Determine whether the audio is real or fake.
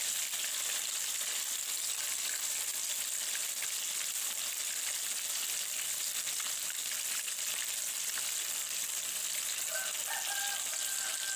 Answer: real